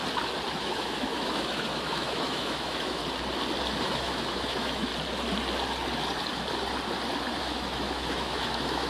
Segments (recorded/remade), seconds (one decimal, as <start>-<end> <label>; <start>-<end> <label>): 0.0-0.5 recorded; 0.5-3.0 remade; 3.0-3.8 recorded; 3.8-4.9 remade; 4.9-7.4 recorded; 7.4-8.9 remade